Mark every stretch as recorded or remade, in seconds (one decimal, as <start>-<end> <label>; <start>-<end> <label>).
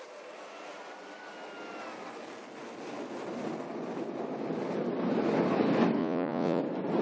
0.0-6.0 recorded; 6.0-6.6 remade; 6.6-7.0 recorded